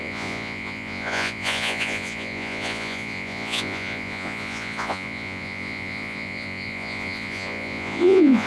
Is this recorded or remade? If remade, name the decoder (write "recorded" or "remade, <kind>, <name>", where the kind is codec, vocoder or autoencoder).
remade, vocoder, Vocos